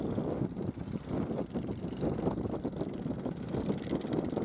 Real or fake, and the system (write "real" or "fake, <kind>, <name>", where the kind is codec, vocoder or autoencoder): real